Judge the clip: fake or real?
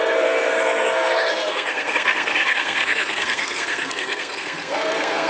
fake